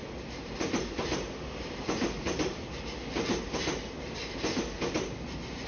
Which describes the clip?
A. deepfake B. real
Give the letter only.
B